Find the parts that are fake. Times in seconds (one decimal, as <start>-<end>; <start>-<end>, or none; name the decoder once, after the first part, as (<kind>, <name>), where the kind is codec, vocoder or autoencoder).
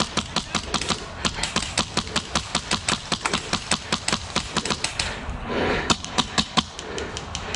5.4-6.6 (codec, HILCodec)